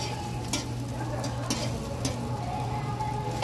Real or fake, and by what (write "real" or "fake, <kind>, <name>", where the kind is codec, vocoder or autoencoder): real